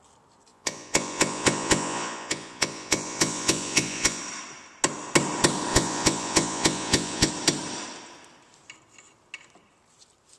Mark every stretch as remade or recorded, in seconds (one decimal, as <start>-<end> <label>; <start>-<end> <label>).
0.0-0.5 recorded; 0.5-4.2 remade; 4.2-5.7 recorded; 5.7-7.3 remade; 7.3-10.4 recorded